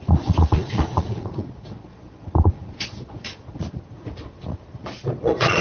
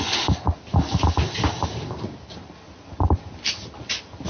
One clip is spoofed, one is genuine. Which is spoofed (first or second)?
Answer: first